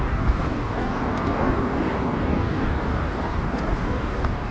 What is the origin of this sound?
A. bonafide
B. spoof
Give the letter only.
B